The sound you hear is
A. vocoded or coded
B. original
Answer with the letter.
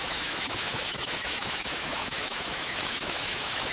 A